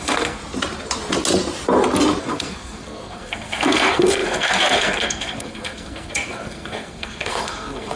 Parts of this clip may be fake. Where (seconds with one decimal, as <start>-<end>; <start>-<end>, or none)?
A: 0.0-0.4; 2.2-8.0